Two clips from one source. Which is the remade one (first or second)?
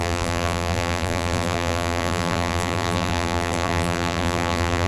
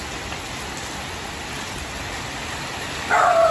first